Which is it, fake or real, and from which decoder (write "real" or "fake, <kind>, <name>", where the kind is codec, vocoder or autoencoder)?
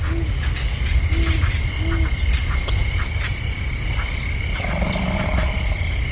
real